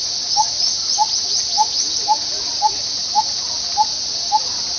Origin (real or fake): real